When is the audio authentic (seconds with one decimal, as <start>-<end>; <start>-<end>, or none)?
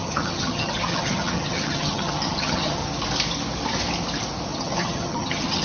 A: 2.8-4.5